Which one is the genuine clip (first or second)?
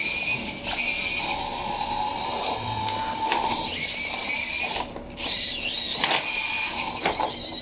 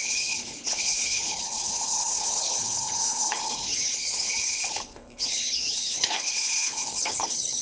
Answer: first